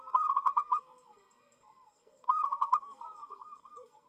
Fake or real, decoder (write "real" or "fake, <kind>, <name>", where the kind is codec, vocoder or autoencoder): fake, codec, SNAC